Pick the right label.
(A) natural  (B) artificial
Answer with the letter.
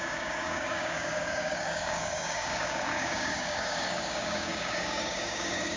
B